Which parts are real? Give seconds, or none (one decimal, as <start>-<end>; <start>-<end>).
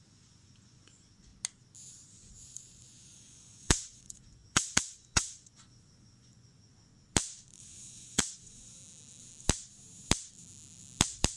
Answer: 1.3-1.9; 6.9-7.6; 8.8-11.4